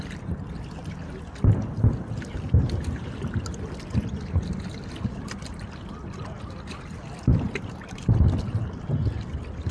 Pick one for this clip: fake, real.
real